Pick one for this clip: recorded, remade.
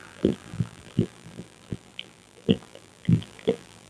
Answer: remade